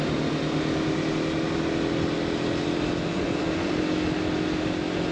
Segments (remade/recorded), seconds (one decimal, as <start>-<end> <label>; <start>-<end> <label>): 0.0-3.1 recorded; 3.1-3.7 remade; 3.7-5.1 recorded